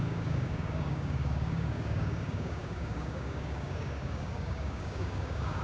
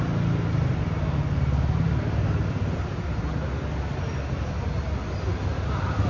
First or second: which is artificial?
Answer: first